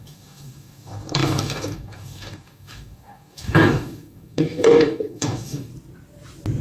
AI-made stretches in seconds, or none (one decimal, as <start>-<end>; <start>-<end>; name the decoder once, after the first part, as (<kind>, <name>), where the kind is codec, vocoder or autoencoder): 0.0-5.7 (codec, DAC)